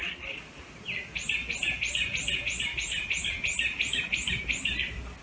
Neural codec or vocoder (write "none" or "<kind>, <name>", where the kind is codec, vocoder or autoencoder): none